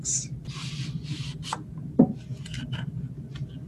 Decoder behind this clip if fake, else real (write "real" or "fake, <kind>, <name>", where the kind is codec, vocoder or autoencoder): real